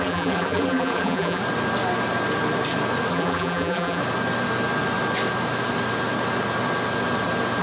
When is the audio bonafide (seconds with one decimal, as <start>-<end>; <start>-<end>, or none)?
1.4-3.1; 4.0-7.6